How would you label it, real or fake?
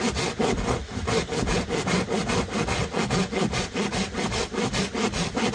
real